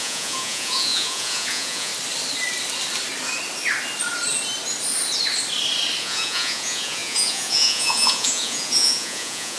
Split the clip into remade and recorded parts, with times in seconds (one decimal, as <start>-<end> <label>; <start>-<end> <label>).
0.0-1.9 remade; 1.9-6.0 recorded; 6.0-9.6 remade